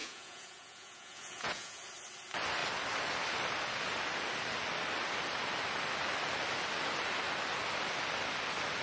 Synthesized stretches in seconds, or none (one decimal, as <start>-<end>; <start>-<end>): 0.0-1.8